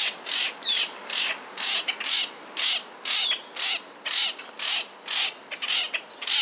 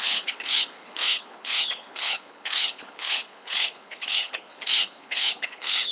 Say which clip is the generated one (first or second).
second